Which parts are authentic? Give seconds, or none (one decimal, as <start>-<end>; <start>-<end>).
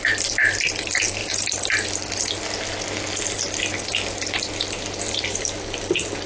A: 0.0-6.3